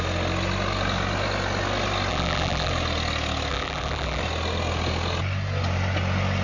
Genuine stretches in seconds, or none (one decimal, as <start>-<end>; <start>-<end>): 0.0-2.1; 2.7-3.5; 4.2-6.4